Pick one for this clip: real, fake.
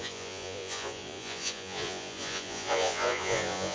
fake